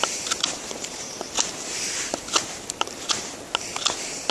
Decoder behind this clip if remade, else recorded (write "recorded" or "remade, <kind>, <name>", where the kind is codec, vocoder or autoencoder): recorded